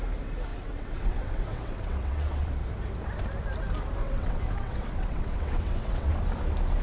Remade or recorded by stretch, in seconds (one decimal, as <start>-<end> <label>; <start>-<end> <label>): 0.0-0.5 recorded; 0.5-2.5 remade; 2.5-4.0 recorded; 4.0-6.1 remade; 6.1-6.8 recorded